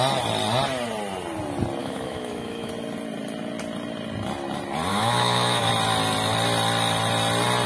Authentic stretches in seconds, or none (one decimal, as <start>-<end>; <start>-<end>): 0.0-1.8; 2.7-4.9; 5.7-7.7